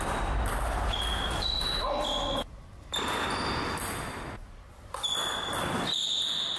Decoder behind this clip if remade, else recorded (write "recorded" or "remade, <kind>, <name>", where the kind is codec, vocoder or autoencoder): recorded